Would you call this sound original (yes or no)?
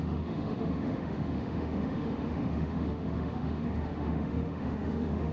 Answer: no